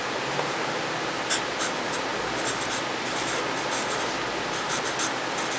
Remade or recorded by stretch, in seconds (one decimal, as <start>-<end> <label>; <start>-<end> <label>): 0.0-5.6 recorded